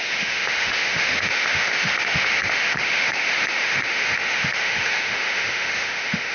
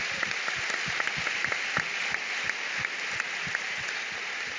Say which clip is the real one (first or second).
second